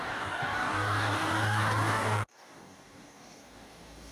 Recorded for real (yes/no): no